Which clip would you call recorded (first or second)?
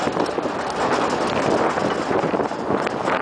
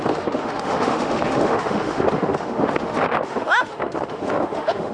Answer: first